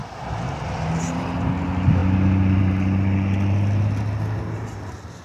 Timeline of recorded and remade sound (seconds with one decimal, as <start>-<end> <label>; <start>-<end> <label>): 0.0-5.2 recorded

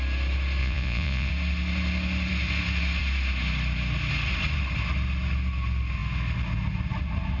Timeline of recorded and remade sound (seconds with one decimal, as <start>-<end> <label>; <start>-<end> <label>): 0.0-0.6 recorded; 0.6-1.3 remade; 1.3-7.4 recorded

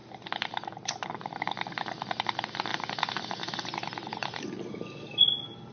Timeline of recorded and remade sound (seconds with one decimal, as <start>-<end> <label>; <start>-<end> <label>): 0.0-5.7 recorded

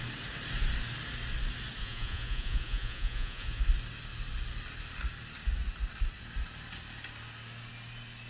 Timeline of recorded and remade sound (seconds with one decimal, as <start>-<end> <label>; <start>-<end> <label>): 0.0-1.8 recorded; 1.8-3.6 remade; 3.6-8.3 recorded

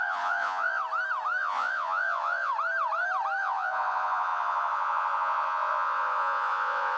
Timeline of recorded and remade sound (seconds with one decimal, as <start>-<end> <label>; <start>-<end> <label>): 0.0-0.8 remade; 0.8-1.4 recorded; 1.4-2.5 remade; 2.5-3.4 recorded; 3.4-7.0 remade